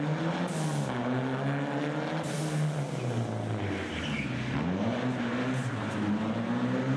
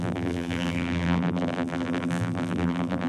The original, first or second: first